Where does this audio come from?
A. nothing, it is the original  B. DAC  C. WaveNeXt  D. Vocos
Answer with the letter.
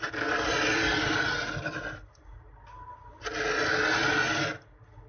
A